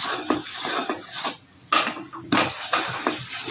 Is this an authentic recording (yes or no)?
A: yes